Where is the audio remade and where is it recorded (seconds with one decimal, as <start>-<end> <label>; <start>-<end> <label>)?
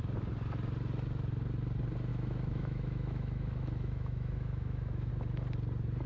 0.0-2.1 recorded; 2.1-5.1 remade; 5.1-6.1 recorded